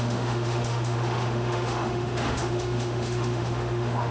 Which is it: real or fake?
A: fake